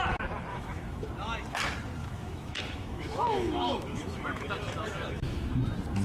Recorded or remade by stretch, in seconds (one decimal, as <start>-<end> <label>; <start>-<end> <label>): 0.0-0.5 recorded; 0.5-1.1 remade; 1.1-2.0 recorded; 2.0-5.6 remade; 5.6-6.0 recorded